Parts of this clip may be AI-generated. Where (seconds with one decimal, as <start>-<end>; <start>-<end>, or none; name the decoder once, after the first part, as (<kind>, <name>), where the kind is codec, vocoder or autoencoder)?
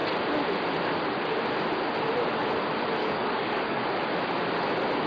3.0-3.8 (codec, DAC)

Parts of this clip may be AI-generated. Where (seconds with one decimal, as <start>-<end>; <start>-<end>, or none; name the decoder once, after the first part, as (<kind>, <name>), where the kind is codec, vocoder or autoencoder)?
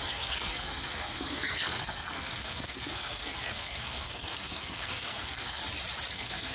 0.0-5.6 (codec, SNAC); 6.1-6.5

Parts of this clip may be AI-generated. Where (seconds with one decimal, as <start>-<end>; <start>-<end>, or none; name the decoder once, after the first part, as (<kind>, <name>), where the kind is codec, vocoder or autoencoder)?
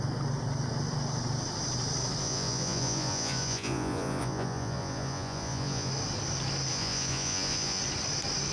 2.2-5.9 (vocoder, Vocos); 6.7-7.8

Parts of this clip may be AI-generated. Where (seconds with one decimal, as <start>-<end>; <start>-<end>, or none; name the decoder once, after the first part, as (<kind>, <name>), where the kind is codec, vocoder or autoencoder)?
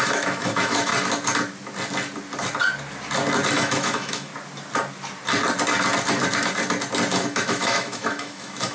0.0-0.9 (autoencoder, DAC-VAE); 3.5-4.3; 7.2-8.7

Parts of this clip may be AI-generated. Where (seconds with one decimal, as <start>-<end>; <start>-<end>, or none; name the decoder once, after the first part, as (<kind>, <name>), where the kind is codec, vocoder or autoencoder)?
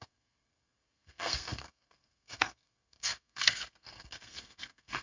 0.0-5.0 (codec, SNAC)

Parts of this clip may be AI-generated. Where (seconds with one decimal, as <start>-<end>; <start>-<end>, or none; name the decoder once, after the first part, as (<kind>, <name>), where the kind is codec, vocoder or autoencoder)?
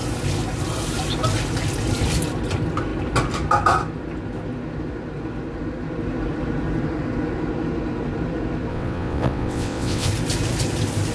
8.7-10.1 (vocoder, WaveNeXt)